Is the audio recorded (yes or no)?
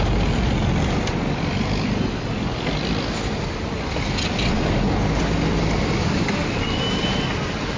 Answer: yes